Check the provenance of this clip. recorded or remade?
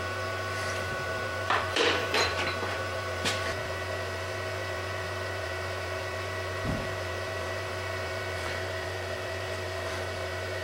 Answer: remade